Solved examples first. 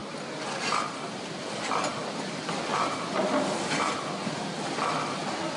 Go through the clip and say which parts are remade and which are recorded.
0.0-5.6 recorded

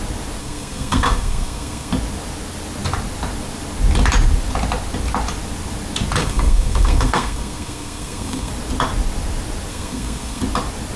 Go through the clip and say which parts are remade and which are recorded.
0.0-0.4 recorded; 0.4-1.9 remade; 1.9-6.2 recorded; 6.2-8.5 remade; 8.5-9.7 recorded; 9.7-10.4 remade; 10.4-11.0 recorded

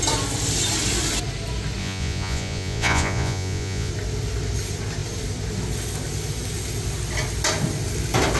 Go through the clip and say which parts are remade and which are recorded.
0.0-1.8 recorded; 1.8-3.9 remade; 3.9-8.4 recorded

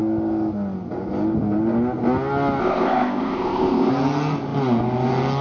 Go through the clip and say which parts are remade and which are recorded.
0.0-2.6 recorded; 2.6-3.9 remade; 3.9-5.4 recorded

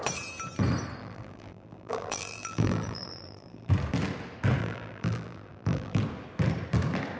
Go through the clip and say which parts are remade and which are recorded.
0.0-1.0 recorded; 1.0-3.7 remade; 3.7-4.6 recorded; 4.6-6.0 remade; 6.0-7.2 recorded